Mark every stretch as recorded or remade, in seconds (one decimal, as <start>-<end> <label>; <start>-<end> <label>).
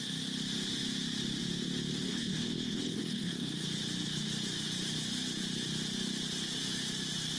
0.0-2.1 recorded; 2.1-3.5 remade; 3.5-7.4 recorded